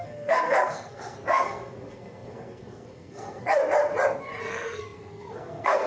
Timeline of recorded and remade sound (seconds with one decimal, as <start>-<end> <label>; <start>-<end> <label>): 0.0-3.6 remade; 3.6-4.4 recorded; 4.4-5.9 remade